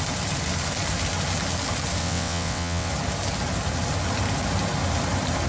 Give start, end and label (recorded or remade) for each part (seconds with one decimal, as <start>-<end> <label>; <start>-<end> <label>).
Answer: 0.0-2.0 recorded; 2.0-2.9 remade; 2.9-5.5 recorded